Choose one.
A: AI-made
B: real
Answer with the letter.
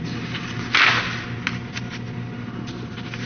B